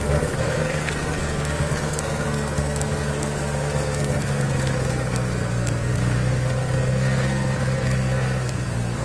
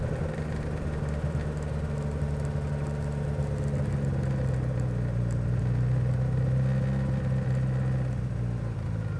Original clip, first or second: second